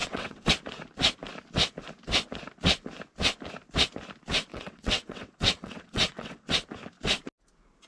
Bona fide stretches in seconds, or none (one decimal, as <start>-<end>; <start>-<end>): 0.5-4.5; 6.5-7.9